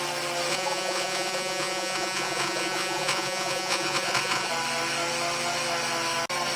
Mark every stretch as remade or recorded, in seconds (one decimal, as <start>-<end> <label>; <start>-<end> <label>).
0.0-0.5 recorded; 0.5-4.5 remade; 4.5-6.6 recorded